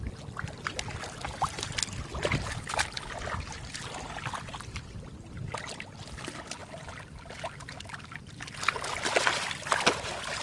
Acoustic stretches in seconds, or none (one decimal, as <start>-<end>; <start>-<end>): 0.0-10.4